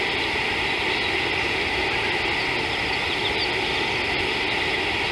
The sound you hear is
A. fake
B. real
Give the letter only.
B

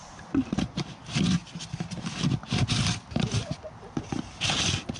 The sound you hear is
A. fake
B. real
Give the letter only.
B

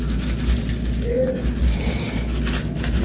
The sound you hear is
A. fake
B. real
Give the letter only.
B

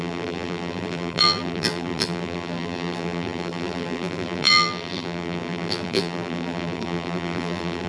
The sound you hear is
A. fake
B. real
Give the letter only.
A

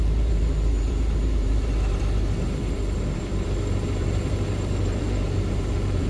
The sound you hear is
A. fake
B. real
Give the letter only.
A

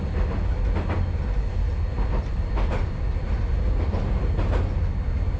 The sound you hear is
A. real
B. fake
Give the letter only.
A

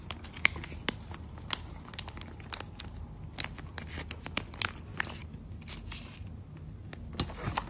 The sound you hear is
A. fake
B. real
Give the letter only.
B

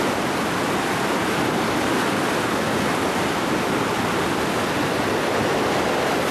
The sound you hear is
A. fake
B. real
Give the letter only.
A